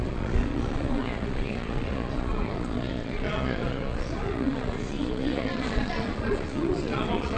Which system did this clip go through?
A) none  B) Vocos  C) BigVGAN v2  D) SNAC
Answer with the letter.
B